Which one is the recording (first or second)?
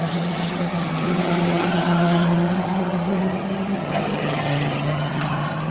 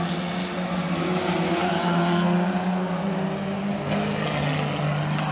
second